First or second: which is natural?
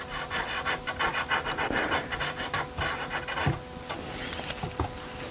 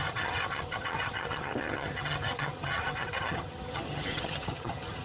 first